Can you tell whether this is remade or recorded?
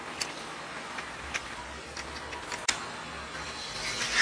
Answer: recorded